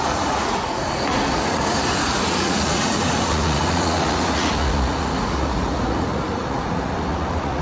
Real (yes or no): no